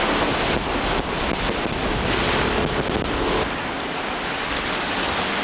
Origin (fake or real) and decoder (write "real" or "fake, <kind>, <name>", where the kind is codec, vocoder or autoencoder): real